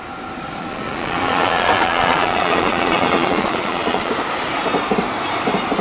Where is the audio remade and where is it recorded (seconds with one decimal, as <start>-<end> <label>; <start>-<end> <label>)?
0.0-0.6 recorded; 0.6-4.1 remade; 4.1-5.8 recorded